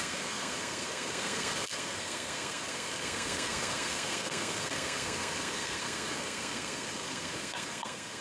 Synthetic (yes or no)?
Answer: yes